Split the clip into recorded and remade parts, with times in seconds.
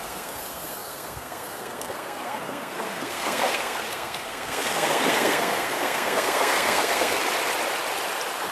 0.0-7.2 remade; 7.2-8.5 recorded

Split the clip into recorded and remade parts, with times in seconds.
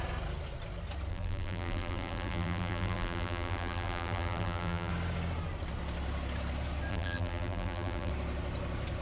0.0-1.1 recorded; 1.1-4.9 remade; 4.9-6.9 recorded; 6.9-8.1 remade; 8.1-9.0 recorded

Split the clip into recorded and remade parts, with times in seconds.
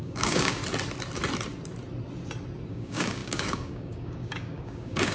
0.0-0.6 remade; 0.6-2.7 recorded; 2.7-5.1 remade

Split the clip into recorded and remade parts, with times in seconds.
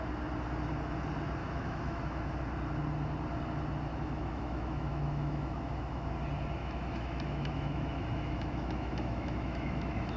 0.0-1.4 recorded; 1.4-2.4 remade; 2.4-3.9 recorded; 3.9-6.1 remade; 6.1-6.6 recorded; 6.6-10.2 remade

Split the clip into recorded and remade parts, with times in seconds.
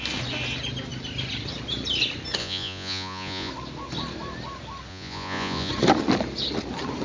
0.0-2.4 recorded; 2.4-3.5 remade; 3.5-4.9 recorded; 4.9-5.7 remade; 5.7-7.0 recorded